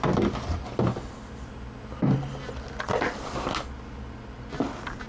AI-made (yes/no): no